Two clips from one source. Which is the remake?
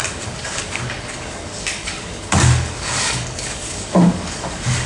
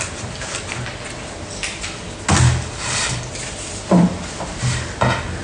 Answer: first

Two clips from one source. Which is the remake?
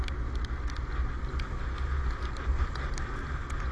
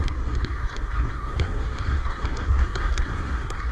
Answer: second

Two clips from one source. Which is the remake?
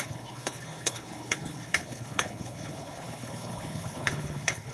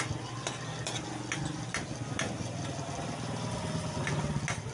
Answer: first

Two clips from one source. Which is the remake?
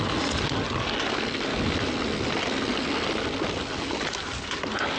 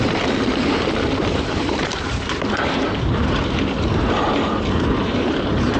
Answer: second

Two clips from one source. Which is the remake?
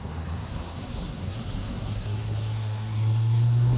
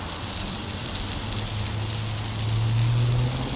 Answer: first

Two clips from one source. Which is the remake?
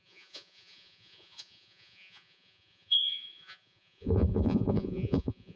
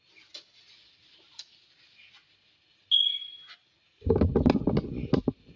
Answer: first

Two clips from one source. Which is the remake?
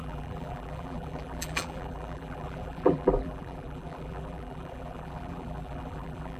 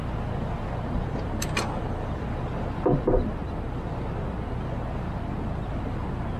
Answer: first